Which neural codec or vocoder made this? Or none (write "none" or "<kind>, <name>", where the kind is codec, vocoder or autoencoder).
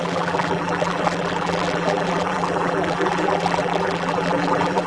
vocoder, BigVGAN v2